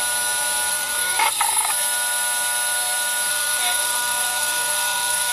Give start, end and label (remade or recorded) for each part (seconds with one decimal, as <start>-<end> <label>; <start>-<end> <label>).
0.0-0.7 recorded; 0.7-1.7 remade; 1.7-3.3 recorded; 3.3-5.3 remade